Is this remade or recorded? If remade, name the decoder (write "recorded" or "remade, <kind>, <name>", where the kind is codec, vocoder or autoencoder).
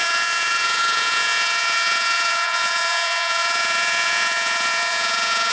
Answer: remade, vocoder, Vocos